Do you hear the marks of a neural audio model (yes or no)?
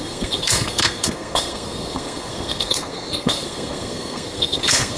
yes